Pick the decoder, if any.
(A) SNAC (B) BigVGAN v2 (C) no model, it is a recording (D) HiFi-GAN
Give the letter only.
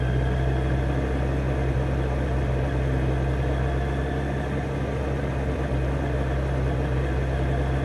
C